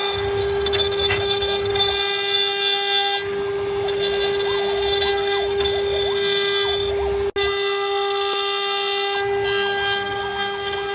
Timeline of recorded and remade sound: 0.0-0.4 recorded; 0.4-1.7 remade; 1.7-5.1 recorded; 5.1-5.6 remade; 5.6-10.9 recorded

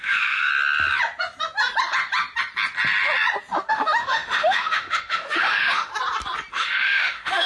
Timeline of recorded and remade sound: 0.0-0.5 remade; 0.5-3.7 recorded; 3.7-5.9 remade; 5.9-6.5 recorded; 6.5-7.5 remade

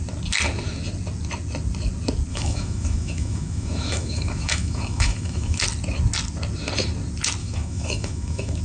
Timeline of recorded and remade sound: 0.0-2.3 recorded; 2.3-5.6 remade; 5.6-7.4 recorded; 7.4-8.6 remade

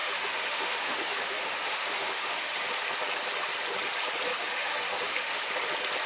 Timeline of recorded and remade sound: 0.0-2.7 remade; 2.7-4.3 recorded; 4.3-5.5 remade; 5.5-6.1 recorded